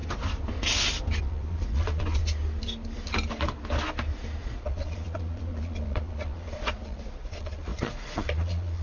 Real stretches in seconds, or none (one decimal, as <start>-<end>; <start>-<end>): 0.0-1.2; 2.2-4.4